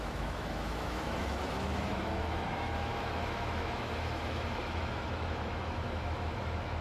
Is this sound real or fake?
fake